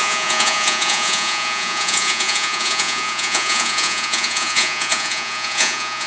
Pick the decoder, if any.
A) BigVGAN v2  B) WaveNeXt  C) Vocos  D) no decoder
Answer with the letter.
C